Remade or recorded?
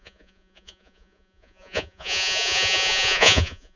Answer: remade